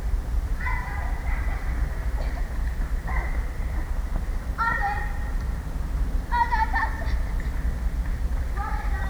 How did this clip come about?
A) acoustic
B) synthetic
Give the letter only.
B